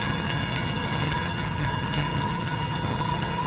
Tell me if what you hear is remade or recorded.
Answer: remade